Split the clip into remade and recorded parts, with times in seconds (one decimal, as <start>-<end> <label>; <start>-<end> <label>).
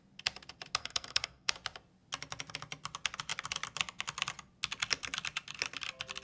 0.0-0.8 recorded; 0.8-1.5 remade; 1.5-6.2 recorded